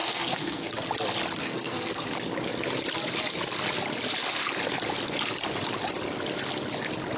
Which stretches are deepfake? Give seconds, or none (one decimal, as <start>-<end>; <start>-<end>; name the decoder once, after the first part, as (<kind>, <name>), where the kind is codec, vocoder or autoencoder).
0.0-0.7 (codec, SNAC); 1.4-2.1